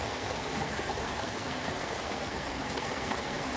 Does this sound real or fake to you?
fake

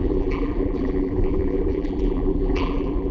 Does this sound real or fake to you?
fake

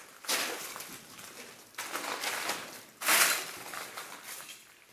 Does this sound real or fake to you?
real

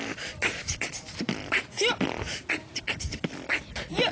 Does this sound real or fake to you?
real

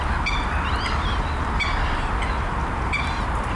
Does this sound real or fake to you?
real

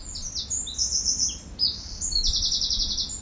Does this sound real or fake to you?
real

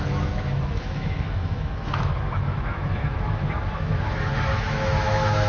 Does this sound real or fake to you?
fake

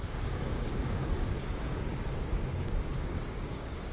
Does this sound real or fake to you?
fake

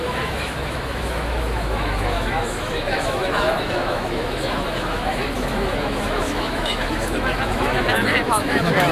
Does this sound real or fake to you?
fake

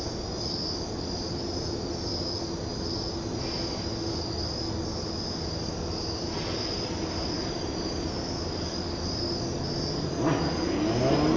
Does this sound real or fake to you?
real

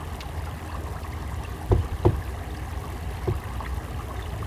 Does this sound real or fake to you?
real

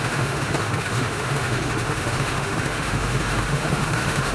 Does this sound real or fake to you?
fake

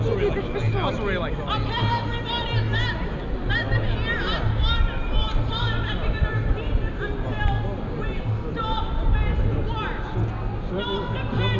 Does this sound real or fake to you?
real